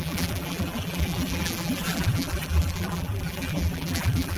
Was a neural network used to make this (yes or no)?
yes